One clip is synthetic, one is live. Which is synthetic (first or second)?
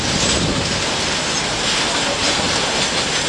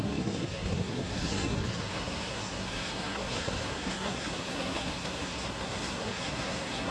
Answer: second